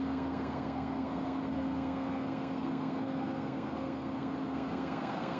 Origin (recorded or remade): remade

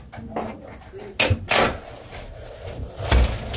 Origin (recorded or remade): recorded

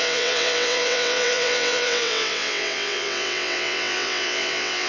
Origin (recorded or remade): remade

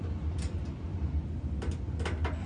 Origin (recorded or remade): recorded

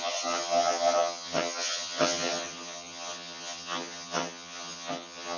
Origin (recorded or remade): remade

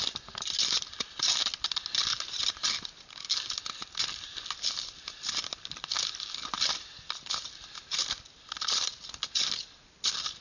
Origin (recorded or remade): recorded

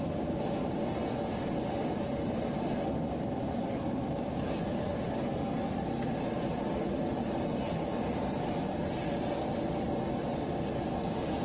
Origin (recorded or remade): recorded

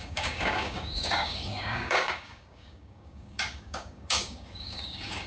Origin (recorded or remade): remade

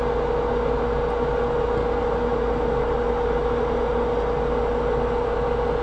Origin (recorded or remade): recorded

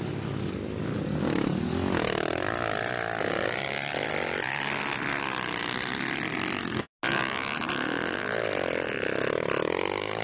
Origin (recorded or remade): recorded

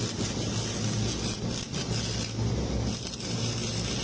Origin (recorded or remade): recorded